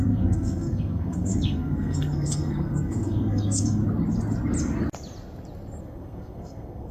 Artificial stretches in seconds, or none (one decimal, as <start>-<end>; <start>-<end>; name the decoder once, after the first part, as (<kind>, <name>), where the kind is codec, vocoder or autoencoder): 0.0-3.8 (codec, SNAC); 5.8-6.9